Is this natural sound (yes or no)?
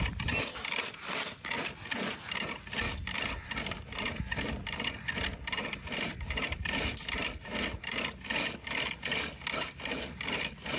yes